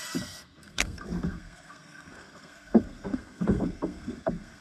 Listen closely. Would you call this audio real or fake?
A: fake